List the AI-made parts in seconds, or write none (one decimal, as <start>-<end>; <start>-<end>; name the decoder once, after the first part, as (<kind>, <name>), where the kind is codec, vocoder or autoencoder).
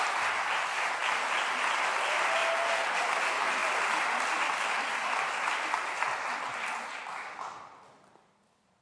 none